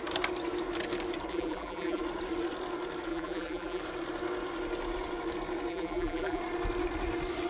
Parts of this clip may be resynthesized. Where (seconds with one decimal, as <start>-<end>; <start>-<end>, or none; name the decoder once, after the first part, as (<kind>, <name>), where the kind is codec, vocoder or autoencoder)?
1.3-2.0 (vocoder, BigVGAN v2); 3.1-3.8; 5.7-6.4